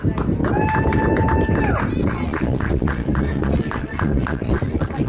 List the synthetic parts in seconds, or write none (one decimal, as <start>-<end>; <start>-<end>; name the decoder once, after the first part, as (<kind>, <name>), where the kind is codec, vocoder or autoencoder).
2.0-5.1 (vocoder, Vocos)